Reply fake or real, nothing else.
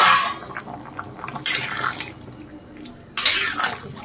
real